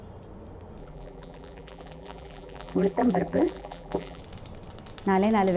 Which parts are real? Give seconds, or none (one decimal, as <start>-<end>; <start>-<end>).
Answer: 0.0-0.8; 4.2-5.6